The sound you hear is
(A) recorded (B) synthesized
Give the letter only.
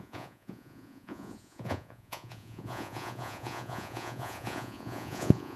B